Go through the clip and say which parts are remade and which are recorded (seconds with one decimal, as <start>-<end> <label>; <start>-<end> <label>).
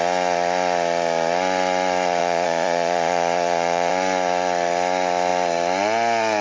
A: 0.0-2.2 recorded; 2.2-3.9 remade; 3.9-6.4 recorded